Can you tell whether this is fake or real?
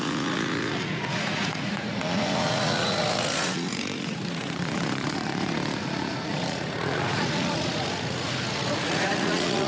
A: fake